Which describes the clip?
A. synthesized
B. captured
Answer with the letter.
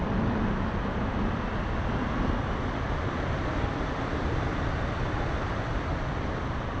B